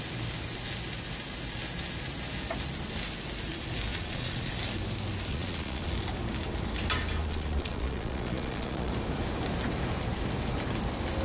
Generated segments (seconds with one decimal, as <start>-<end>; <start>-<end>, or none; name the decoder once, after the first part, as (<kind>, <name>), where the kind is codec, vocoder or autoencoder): 3.9-4.5 (vocoder, Vocos); 5.3-5.9; 7.2-8.9